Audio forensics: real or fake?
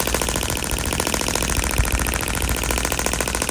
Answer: real